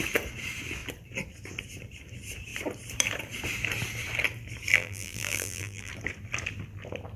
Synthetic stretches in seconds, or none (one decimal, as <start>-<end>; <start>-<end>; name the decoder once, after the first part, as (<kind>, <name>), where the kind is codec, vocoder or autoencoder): 4.7-5.9 (vocoder, BigVGAN v2)